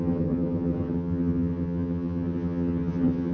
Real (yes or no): no